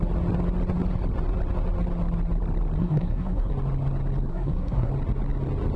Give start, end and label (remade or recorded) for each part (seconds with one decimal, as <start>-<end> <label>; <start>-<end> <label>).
0.0-2.8 recorded; 2.8-3.5 remade; 3.5-4.3 recorded; 4.3-4.9 remade; 4.9-5.8 recorded